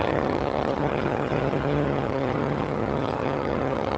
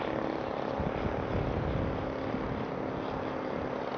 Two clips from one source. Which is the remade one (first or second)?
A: first